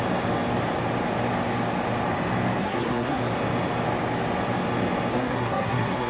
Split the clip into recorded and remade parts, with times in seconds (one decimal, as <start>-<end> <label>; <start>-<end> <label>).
0.0-2.6 recorded; 2.6-3.2 remade; 3.2-5.1 recorded; 5.1-6.1 remade